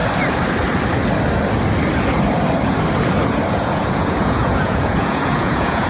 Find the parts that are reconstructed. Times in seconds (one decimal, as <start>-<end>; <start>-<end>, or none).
3.5-5.9